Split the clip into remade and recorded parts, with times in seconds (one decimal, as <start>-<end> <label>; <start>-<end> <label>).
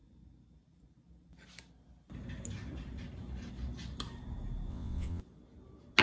0.0-4.7 recorded; 4.7-5.2 remade; 5.2-6.0 recorded